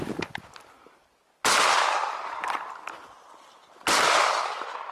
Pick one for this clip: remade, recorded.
recorded